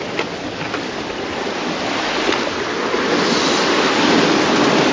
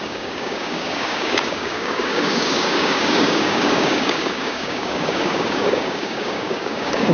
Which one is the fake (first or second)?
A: second